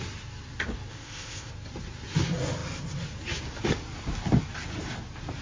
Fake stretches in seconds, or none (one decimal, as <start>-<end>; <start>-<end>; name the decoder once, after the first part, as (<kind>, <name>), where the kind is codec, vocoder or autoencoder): 0.9-1.5 (codec, ZipCodec)